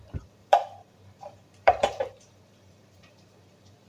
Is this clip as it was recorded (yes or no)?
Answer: no